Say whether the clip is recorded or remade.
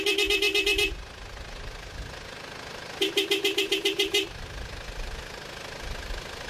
recorded